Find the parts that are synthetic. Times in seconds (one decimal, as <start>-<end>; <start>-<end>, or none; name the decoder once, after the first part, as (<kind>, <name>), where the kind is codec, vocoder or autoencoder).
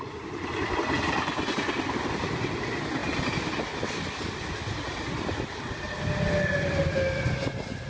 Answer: none